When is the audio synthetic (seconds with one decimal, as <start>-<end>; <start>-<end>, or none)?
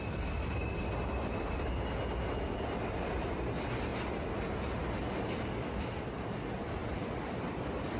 6.8-8.0